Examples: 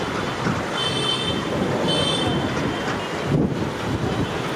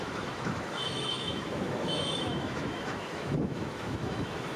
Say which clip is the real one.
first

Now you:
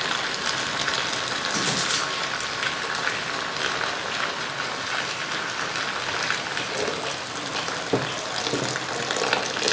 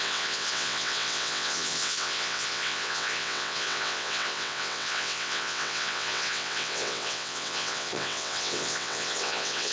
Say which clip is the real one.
first